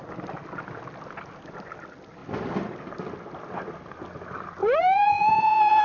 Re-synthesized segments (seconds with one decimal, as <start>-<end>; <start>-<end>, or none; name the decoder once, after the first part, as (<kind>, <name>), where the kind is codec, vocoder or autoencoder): 4.6-5.8 (vocoder, Vocos)